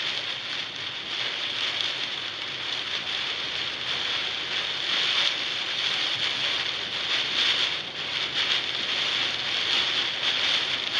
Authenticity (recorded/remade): recorded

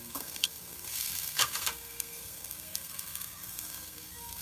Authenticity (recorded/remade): remade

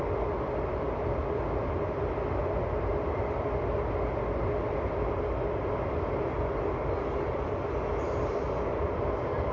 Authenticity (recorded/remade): recorded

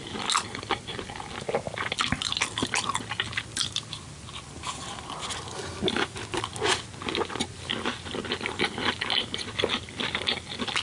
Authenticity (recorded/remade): recorded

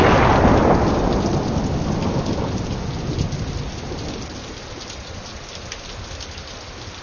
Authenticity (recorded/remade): recorded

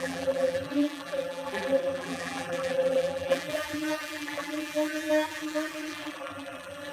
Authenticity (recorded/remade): remade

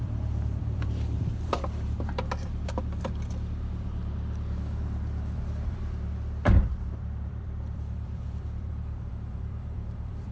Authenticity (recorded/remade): remade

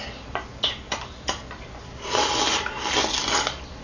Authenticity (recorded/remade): recorded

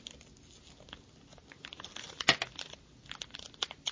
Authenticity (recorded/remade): recorded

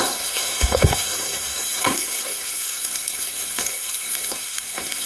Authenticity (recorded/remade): remade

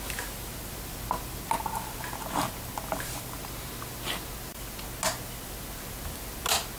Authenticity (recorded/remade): recorded